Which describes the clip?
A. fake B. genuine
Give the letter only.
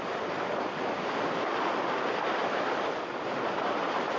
B